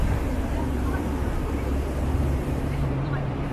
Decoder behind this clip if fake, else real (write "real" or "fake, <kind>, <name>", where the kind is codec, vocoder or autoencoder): fake, vocoder, BigVGAN v2